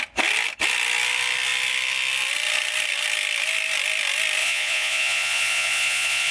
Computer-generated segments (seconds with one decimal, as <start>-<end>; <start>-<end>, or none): 4.4-6.3